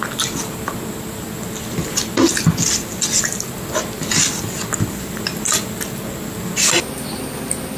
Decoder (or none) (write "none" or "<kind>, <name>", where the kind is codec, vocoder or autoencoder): none